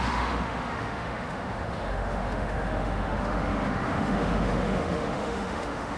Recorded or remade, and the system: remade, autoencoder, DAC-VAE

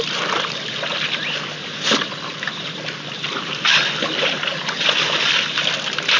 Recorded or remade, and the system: recorded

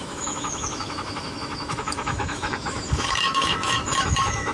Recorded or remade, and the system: remade, autoencoder, DAC-VAE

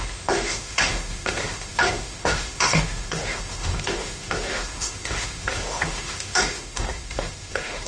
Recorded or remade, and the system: remade, autoencoder, DAC-VAE